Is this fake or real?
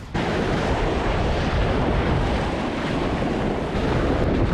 real